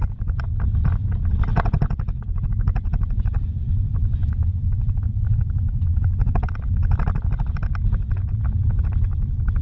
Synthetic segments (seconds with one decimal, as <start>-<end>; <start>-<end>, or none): 1.5-3.6